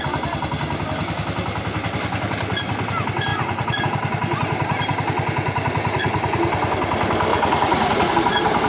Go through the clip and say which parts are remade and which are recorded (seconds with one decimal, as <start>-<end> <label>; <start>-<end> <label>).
0.0-3.3 recorded; 3.3-3.8 remade; 3.8-7.3 recorded; 7.3-8.1 remade; 8.1-8.7 recorded

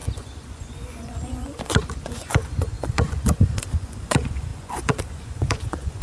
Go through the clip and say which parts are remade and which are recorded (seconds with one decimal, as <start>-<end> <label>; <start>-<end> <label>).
0.0-6.0 remade

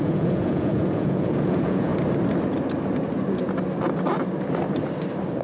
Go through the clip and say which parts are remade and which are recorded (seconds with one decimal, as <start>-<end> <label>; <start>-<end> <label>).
0.0-1.9 remade; 1.9-5.4 recorded

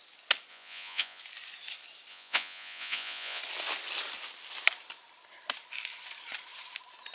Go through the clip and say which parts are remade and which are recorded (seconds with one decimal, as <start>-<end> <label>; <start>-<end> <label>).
0.0-0.5 recorded; 0.5-1.2 remade; 1.2-2.1 recorded; 2.1-3.4 remade; 3.4-7.1 recorded

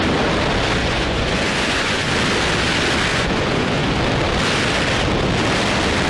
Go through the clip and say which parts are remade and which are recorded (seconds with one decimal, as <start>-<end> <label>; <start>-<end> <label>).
0.0-0.8 recorded; 0.8-2.1 remade; 2.1-3.1 recorded; 3.1-4.0 remade; 4.0-6.1 recorded

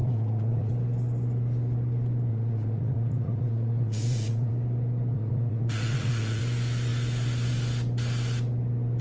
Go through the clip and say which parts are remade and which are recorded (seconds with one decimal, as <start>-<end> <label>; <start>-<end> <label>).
0.0-0.7 remade; 0.7-2.3 recorded; 2.3-4.5 remade; 4.5-5.1 recorded; 5.1-6.4 remade; 6.4-9.0 recorded

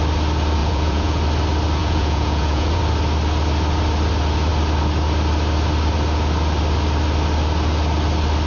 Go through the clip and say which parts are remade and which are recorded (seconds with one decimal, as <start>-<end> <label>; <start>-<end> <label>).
0.0-0.6 recorded; 0.6-1.2 remade; 1.2-1.8 recorded; 1.8-2.8 remade; 2.8-8.5 recorded

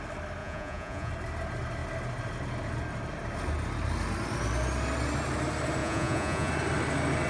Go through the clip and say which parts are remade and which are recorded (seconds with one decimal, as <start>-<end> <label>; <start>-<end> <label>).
0.0-0.4 recorded; 0.4-1.1 remade; 1.1-5.8 recorded; 5.8-6.5 remade; 6.5-7.3 recorded